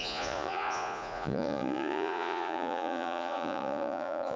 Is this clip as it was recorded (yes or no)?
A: no